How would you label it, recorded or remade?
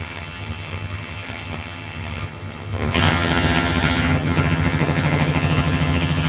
remade